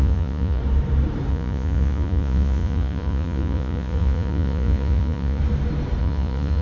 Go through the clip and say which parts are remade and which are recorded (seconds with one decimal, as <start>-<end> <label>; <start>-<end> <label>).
0.0-0.6 remade; 0.6-1.3 recorded; 1.3-5.4 remade; 5.4-6.0 recorded; 6.0-6.6 remade